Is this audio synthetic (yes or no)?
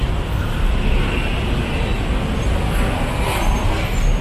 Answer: no